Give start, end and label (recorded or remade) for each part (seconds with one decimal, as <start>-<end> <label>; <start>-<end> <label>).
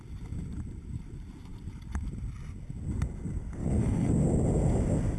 0.0-3.6 recorded; 3.6-4.1 remade; 4.1-5.2 recorded